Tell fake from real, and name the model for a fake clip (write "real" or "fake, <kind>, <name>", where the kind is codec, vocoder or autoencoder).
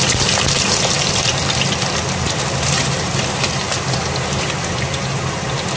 real